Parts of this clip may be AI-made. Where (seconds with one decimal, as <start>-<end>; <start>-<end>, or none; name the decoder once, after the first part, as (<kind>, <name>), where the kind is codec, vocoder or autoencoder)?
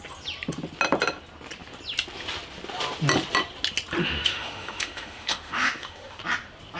4.0-6.2 (autoencoder, DAC-VAE)